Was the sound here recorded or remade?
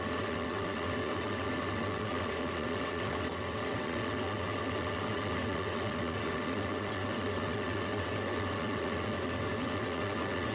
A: remade